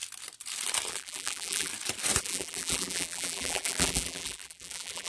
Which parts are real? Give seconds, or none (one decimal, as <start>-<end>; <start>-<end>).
0.0-0.9; 1.7-2.2